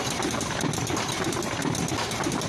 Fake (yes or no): no